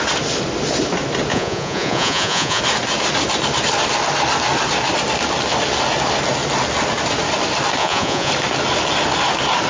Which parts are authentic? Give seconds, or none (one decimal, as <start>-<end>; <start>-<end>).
0.0-1.3; 2.6-7.8; 8.3-9.7